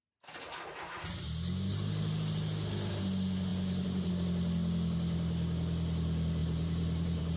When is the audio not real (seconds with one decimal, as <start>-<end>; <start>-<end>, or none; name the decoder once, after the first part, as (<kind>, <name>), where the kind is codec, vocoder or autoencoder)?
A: 3.5-4.1 (vocoder, BigVGAN v2); 6.4-7.4